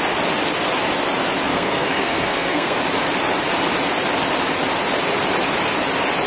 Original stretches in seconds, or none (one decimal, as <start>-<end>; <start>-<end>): 0.0-1.5; 2.8-6.3